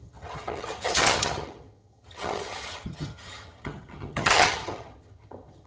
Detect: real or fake fake